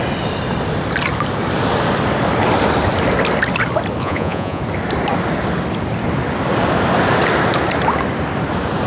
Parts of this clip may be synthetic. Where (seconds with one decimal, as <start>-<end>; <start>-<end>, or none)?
4.0-4.6